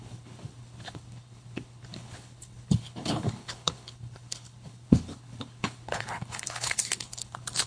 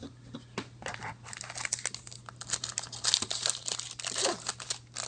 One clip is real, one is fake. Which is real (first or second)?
second